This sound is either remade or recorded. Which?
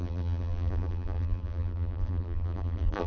remade